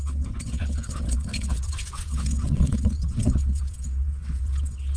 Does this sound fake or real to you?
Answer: fake